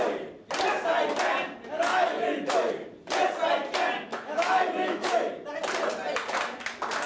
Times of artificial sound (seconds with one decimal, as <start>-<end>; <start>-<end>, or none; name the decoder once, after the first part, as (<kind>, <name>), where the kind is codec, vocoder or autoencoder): 1.9-2.7 (autoencoder, DAC-VAE); 4.1-5.3